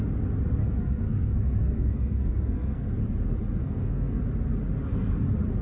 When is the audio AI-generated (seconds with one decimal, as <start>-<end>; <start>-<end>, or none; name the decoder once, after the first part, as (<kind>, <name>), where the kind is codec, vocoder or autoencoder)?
0.6-2.9 (codec, SNAC); 3.6-4.2